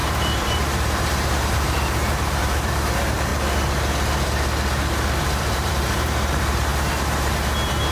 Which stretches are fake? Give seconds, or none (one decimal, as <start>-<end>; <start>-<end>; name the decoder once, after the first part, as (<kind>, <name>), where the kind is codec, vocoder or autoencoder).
0.0-3.3 (vocoder, BigVGAN v2); 5.2-6.7